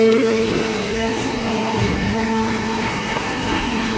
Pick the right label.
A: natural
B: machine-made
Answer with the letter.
B